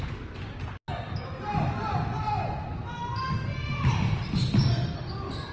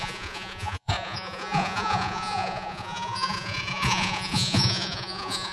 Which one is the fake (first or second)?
second